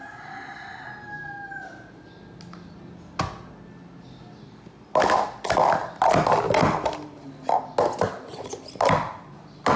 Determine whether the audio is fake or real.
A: real